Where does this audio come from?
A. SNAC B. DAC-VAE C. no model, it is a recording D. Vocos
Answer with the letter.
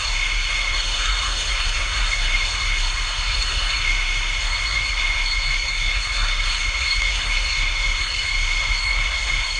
A